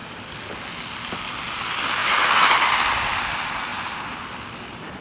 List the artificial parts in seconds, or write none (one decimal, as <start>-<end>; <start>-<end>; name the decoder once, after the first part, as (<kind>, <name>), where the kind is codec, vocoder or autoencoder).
none